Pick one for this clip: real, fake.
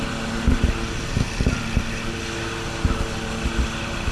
real